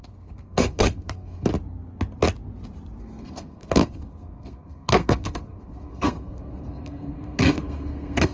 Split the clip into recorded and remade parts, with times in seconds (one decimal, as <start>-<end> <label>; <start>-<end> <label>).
0.0-1.5 remade; 1.5-3.0 recorded; 3.0-8.3 remade